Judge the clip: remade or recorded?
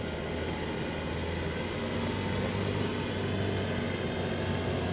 recorded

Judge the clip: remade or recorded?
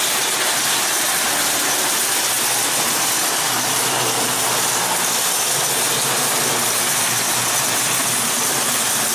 recorded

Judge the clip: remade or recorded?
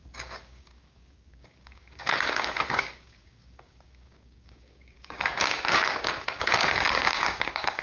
remade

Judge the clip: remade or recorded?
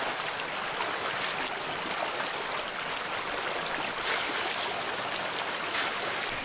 recorded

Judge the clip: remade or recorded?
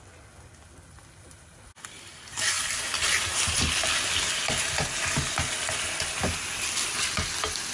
recorded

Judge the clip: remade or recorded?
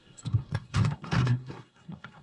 remade